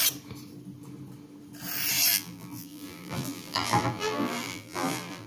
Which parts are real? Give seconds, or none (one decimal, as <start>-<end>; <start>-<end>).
0.0-2.1